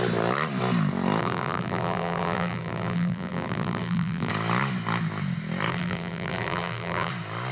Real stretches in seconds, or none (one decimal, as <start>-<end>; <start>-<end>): 0.0-1.2; 4.3-5.7; 7.1-7.5